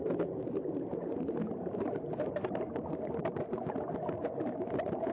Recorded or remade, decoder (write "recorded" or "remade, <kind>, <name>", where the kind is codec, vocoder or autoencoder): recorded